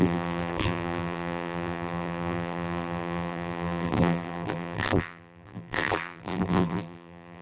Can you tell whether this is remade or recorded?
remade